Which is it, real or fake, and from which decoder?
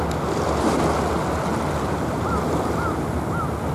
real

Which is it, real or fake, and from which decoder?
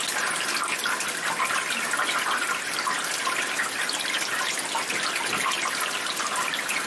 real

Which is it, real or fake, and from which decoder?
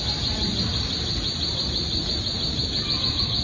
real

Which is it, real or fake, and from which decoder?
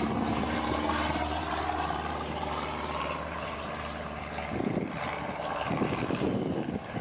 fake, vocoder, BigVGAN v2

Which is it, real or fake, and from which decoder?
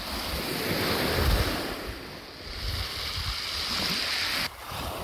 real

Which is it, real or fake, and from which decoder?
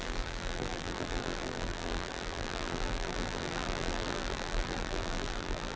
fake, vocoder, BigVGAN v2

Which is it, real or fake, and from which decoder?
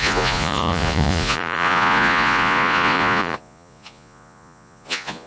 fake, vocoder, Vocos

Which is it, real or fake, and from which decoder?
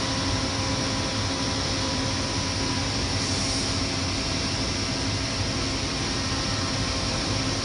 real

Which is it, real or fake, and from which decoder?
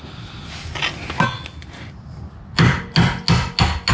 real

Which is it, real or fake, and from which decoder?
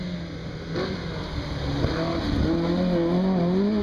real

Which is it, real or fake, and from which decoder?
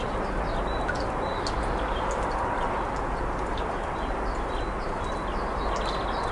real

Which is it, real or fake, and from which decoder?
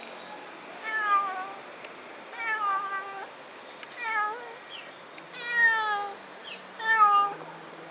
real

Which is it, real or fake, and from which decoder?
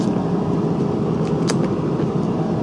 real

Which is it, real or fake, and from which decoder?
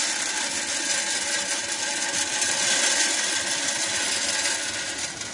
real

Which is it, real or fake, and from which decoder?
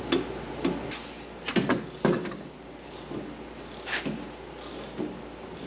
real